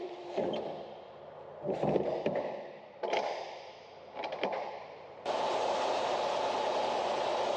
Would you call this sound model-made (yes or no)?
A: yes